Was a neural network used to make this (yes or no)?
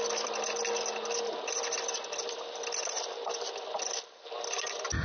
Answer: no